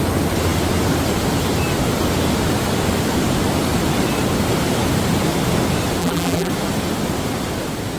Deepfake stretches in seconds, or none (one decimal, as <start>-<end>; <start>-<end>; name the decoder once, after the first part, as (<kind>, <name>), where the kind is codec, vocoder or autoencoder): 6.0-6.5 (vocoder, BigVGAN v2)